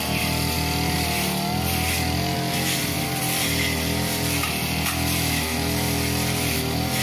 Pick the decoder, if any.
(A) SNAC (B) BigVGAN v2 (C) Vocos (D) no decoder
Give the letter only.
D